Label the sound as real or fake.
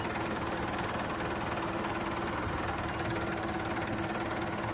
real